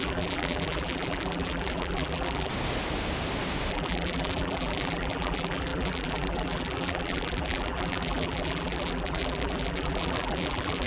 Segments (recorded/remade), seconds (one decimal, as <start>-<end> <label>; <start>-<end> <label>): 0.0-2.5 remade; 2.5-3.7 recorded; 3.7-10.9 remade